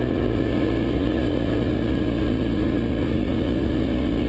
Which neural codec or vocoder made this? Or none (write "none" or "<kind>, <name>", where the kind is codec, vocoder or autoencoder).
vocoder, Vocos